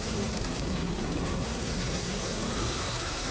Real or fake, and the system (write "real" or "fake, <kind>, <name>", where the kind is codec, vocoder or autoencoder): fake, codec, SNAC